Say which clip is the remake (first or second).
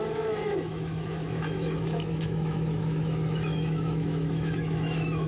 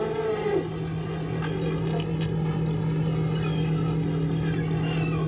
first